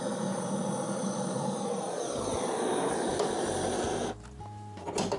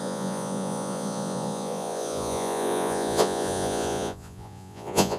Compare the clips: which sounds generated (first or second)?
second